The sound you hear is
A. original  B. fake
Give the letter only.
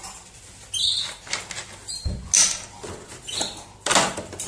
A